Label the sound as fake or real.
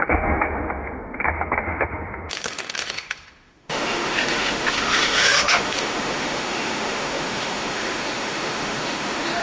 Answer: fake